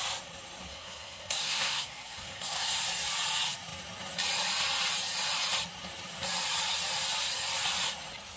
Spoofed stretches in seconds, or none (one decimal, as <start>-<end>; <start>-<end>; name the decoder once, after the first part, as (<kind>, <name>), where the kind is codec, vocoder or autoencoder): 0.7-2.8 (codec, SNAC)